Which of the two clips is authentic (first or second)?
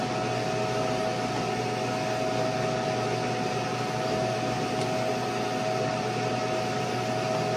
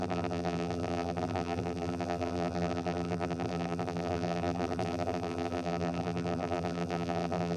first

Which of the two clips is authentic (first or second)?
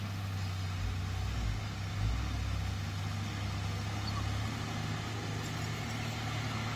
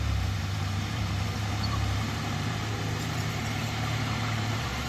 first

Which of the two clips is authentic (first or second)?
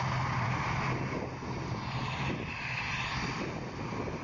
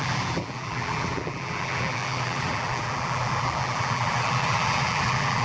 first